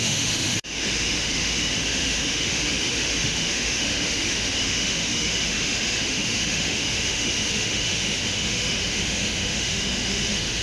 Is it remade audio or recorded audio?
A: remade